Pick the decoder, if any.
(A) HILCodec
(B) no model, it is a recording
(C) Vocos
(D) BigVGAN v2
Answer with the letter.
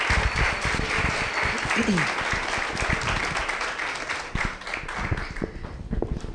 B